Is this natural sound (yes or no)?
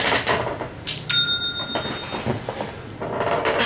yes